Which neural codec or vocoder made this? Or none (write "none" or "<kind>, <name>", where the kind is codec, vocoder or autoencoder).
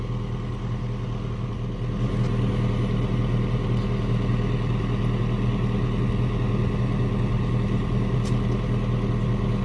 none